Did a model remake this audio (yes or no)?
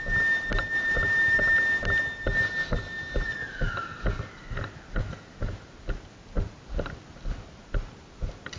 no